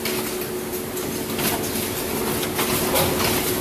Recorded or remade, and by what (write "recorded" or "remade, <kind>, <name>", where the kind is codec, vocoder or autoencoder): recorded